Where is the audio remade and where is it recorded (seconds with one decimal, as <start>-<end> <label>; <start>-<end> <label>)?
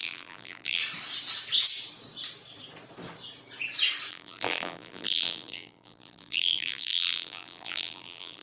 0.0-0.8 remade; 0.8-4.1 recorded; 4.1-8.4 remade